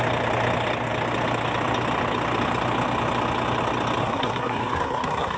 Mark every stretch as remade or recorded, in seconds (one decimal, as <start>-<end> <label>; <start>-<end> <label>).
0.0-4.0 recorded; 4.0-5.4 remade